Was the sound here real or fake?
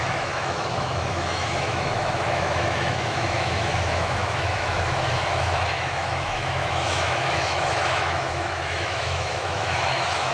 fake